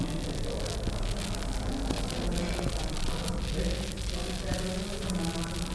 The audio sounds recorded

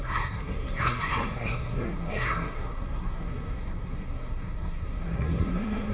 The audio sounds remade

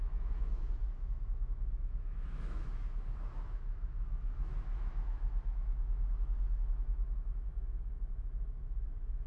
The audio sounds remade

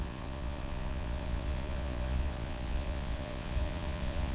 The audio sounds remade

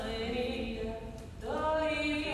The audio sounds recorded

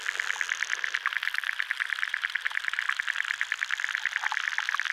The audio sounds recorded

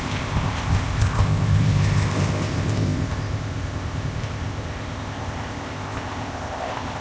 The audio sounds remade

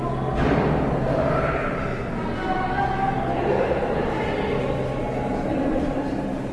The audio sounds recorded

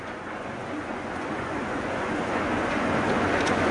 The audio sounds remade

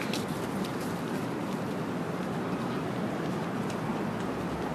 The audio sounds recorded